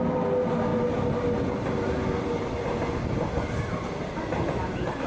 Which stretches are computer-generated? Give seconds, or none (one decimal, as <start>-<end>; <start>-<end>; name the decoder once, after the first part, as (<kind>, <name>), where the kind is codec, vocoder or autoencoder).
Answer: none